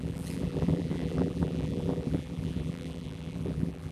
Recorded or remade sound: remade